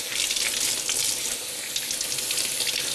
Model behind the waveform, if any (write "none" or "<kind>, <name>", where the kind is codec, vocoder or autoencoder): none